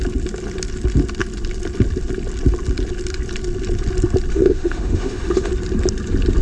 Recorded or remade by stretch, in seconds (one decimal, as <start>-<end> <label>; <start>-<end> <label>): 0.0-4.3 recorded; 4.3-5.5 remade; 5.5-6.4 recorded